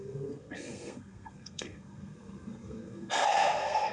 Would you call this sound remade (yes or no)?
yes